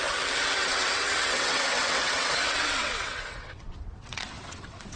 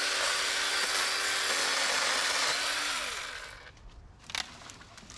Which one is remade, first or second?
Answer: first